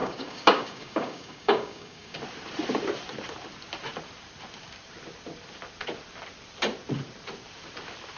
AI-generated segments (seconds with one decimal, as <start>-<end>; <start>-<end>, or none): 0.0-2.2